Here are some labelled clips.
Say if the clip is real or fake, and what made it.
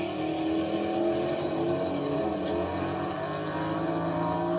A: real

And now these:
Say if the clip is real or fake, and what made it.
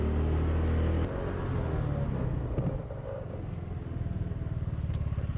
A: real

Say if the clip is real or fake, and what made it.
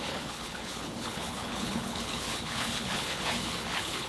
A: fake, codec, HILCodec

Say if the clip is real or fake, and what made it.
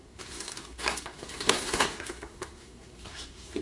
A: fake, codec, SNAC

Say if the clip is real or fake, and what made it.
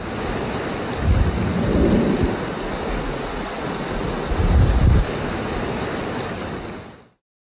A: real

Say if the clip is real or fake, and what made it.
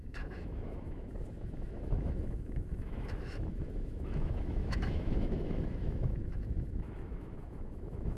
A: fake, autoencoder, DAC-VAE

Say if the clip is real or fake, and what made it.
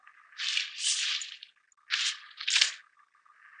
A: real